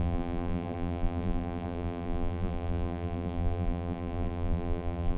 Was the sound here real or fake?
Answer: fake